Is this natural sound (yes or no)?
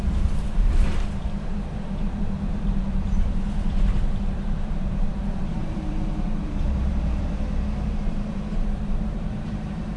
no